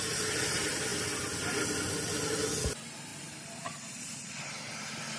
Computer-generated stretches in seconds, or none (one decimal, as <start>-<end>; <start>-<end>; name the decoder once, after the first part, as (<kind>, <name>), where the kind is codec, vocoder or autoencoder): none